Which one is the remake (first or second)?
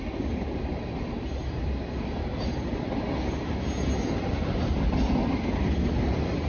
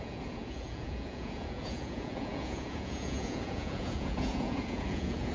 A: second